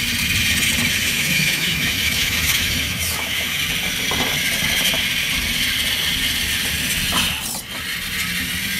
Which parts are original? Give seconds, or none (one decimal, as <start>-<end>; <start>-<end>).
0.0-1.0; 3.6-8.8